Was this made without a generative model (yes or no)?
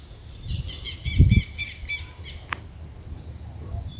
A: yes